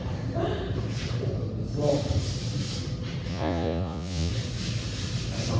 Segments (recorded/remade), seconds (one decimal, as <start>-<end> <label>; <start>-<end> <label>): 0.0-3.3 recorded; 3.3-4.3 remade; 4.3-5.6 recorded